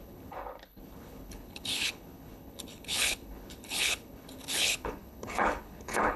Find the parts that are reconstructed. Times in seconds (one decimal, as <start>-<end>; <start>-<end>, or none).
0.0-6.2